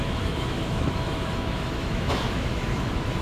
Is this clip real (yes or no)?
no